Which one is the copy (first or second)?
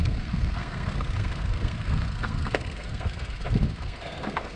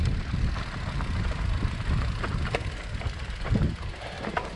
first